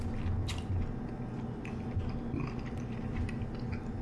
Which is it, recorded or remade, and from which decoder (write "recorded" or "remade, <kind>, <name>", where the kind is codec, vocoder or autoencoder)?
recorded